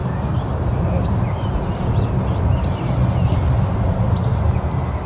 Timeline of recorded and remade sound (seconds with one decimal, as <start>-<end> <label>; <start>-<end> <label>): 0.0-5.1 recorded

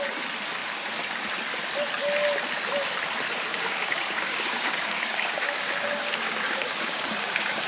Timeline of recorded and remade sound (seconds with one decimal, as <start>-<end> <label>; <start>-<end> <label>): 0.0-3.5 recorded; 3.5-7.7 remade

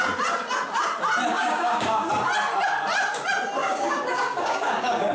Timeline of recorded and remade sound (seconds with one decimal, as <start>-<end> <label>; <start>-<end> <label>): 0.0-1.3 recorded; 1.3-2.1 remade; 2.1-3.6 recorded; 3.6-5.1 remade

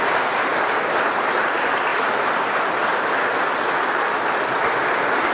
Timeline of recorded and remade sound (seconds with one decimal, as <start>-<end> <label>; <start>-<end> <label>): 0.0-5.3 recorded

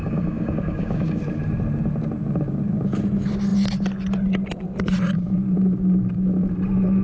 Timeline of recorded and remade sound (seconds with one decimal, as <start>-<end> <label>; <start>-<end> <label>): 0.0-1.2 remade; 1.2-7.0 recorded

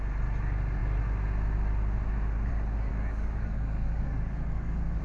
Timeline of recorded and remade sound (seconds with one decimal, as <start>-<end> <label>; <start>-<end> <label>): 0.0-2.9 recorded; 2.9-5.0 remade